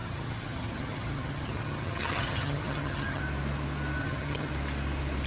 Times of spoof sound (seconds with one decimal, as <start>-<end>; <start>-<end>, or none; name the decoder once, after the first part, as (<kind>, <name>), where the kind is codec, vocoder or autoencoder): 0.0-3.2 (vocoder, HiFi-GAN); 4.0-4.5